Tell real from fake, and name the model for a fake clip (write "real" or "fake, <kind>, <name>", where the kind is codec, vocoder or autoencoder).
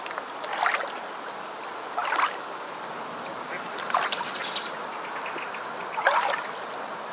real